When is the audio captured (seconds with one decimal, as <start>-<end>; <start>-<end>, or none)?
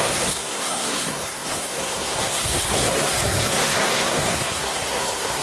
none